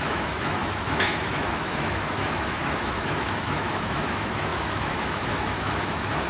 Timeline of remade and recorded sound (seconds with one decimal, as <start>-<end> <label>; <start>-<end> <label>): 0.0-6.3 remade